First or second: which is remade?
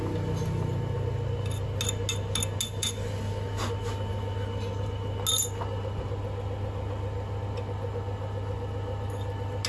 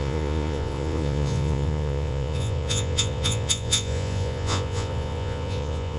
second